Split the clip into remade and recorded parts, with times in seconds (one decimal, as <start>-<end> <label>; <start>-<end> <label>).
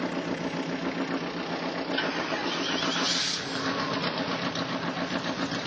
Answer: 0.0-2.1 recorded; 2.1-5.7 remade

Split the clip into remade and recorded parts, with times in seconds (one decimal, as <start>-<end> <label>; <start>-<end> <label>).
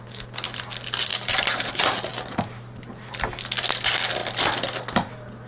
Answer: 0.0-1.1 recorded; 1.1-1.7 remade; 1.7-2.1 recorded; 2.1-3.1 remade; 3.1-5.5 recorded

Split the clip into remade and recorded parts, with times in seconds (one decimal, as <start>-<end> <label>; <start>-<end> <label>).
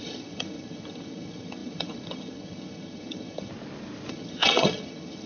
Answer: 0.0-3.5 remade; 3.5-4.1 recorded; 4.1-5.3 remade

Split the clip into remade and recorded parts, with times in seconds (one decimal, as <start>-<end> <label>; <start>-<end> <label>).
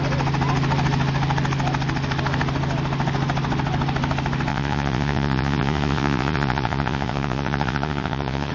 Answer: 0.0-4.5 recorded; 4.5-8.5 remade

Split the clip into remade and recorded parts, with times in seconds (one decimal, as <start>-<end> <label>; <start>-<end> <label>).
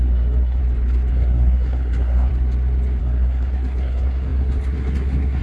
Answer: 0.0-0.6 remade; 0.6-1.1 recorded; 1.1-2.3 remade; 2.3-3.0 recorded; 3.0-5.4 remade